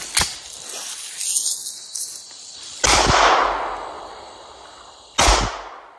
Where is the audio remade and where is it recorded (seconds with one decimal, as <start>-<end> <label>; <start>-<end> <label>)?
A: 0.0-6.0 recorded